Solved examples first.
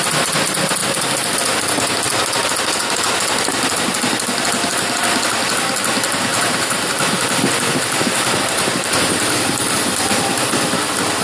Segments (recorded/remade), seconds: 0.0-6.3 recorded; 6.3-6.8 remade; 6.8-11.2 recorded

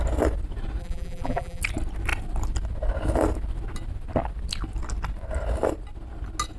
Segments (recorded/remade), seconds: 0.0-0.8 recorded; 0.8-1.6 remade; 1.6-6.6 recorded

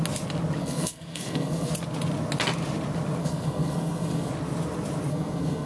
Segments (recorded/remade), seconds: 0.0-0.6 recorded; 0.6-1.7 remade; 1.7-3.2 recorded; 3.2-4.3 remade; 4.3-5.1 recorded; 5.1-5.7 remade

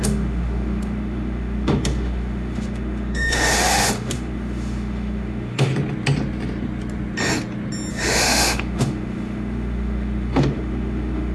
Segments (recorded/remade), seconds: 0.0-5.7 remade; 5.7-7.9 recorded; 7.9-11.3 remade

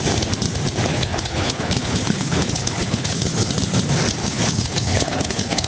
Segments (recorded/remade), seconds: 0.0-0.9 recorded; 0.9-3.5 remade; 3.5-4.2 recorded; 4.2-5.7 remade

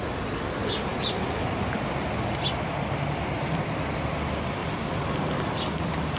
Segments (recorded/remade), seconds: 0.0-6.2 recorded

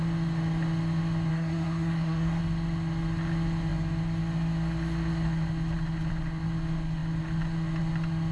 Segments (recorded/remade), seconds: 0.0-1.3 recorded; 1.3-2.4 remade; 2.4-8.3 recorded

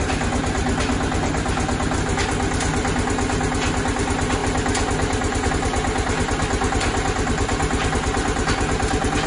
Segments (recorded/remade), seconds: 0.0-9.3 recorded